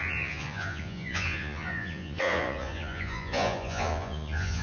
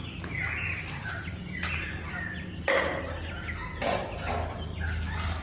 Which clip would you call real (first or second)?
second